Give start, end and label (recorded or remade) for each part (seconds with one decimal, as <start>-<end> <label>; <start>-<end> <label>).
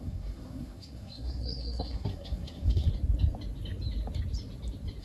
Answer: 0.0-2.9 remade; 2.9-5.0 recorded